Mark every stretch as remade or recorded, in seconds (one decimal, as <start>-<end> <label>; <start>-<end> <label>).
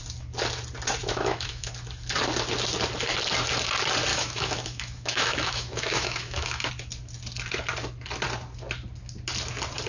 0.0-1.0 recorded; 1.0-1.7 remade; 1.7-4.1 recorded; 4.1-6.7 remade; 6.7-9.9 recorded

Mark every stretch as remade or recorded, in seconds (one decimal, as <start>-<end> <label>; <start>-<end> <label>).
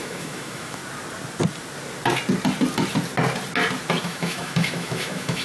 0.0-0.8 remade; 0.8-4.0 recorded; 4.0-5.4 remade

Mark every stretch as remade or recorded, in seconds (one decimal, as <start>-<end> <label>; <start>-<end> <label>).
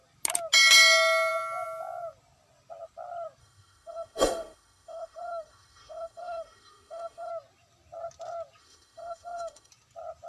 0.0-3.4 recorded; 3.4-7.3 remade; 7.3-8.6 recorded; 8.6-9.7 remade; 9.7-10.3 recorded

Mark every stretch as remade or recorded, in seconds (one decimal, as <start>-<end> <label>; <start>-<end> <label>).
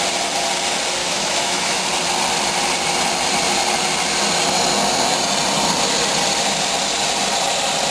0.0-1.0 recorded; 1.0-1.8 remade; 1.8-7.9 recorded